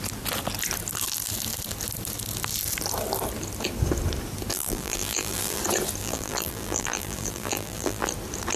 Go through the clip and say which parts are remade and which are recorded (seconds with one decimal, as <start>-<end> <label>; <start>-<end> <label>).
0.0-4.5 recorded; 4.5-5.6 remade; 5.6-6.0 recorded; 6.0-8.1 remade; 8.1-8.6 recorded